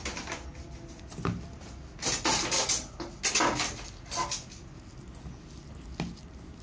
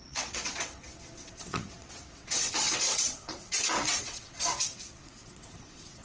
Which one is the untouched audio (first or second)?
first